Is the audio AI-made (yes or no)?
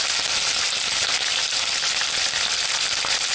no